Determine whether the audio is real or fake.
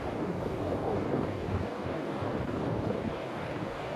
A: fake